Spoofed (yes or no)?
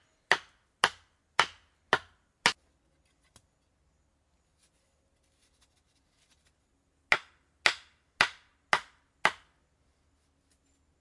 no